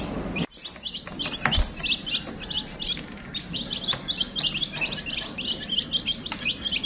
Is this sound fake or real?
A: real